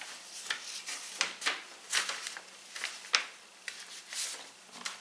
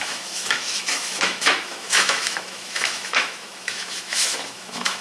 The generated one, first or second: second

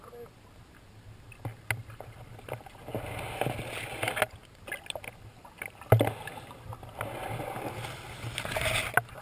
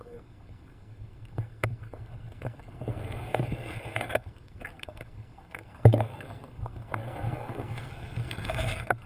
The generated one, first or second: second